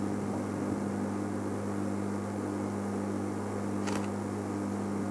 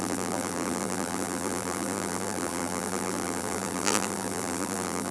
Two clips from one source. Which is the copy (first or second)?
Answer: second